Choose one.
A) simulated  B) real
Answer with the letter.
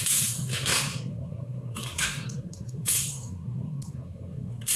A